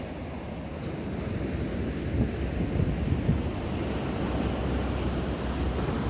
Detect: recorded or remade recorded